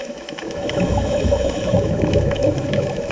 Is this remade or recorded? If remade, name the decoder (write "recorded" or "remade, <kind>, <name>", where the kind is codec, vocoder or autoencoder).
remade, autoencoder, DAC-VAE